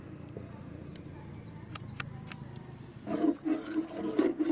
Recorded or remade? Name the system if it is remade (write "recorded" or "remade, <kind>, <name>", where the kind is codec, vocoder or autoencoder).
recorded